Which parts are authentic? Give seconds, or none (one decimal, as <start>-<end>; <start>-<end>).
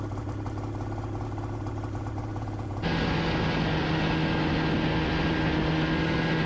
0.0-2.3; 2.8-6.5